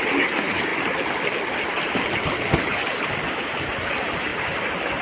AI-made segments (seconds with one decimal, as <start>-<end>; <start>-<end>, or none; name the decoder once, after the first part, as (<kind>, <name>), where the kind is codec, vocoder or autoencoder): none

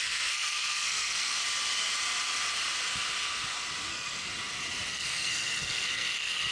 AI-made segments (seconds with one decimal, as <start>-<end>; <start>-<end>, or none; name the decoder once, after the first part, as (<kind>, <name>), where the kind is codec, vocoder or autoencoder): 0.0-1.4 (codec, SNAC); 3.9-4.3; 4.9-6.5

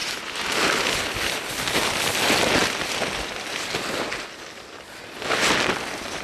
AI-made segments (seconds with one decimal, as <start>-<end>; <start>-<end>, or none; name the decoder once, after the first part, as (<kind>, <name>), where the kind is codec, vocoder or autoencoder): none

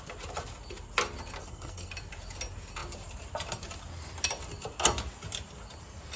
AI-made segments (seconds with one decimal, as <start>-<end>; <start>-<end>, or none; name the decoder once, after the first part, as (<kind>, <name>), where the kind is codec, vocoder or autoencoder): 1.4-1.9 (codec, SNAC)

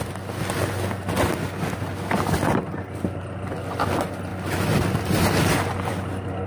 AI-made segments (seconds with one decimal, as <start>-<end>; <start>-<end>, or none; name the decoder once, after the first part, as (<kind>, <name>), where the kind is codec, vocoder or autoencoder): none

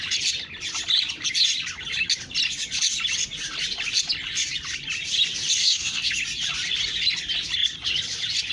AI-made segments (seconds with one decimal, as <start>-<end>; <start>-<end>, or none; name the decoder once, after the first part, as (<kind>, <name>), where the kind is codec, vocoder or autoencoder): 5.6-6.1 (codec, SNAC)

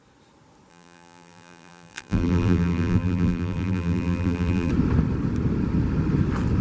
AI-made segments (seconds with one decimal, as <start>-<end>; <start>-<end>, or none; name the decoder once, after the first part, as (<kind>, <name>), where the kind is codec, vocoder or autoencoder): 0.7-4.7 (vocoder, BigVGAN v2)